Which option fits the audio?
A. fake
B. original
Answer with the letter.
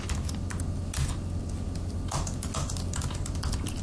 B